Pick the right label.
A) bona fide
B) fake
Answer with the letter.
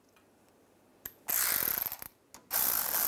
A